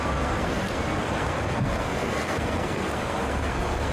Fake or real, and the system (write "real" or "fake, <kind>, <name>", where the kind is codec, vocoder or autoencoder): fake, codec, SNAC